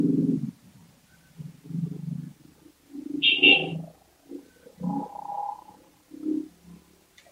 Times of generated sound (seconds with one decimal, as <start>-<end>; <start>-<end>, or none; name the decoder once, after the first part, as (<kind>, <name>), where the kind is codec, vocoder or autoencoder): 5.4-5.9 (vocoder, Vocos)